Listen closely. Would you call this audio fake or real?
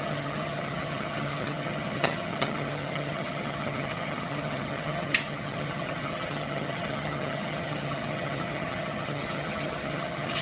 fake